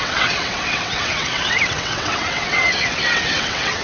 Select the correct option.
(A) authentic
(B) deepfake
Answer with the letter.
B